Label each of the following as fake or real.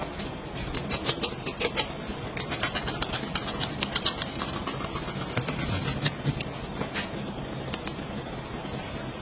real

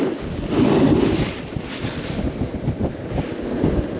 real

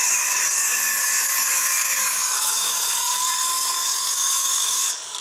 fake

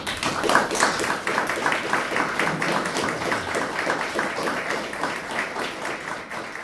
real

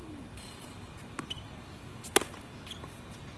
real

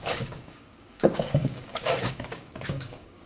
fake